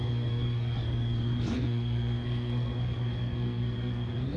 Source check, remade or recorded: remade